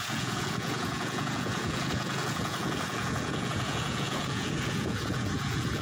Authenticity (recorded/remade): remade